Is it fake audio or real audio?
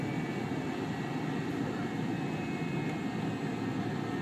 real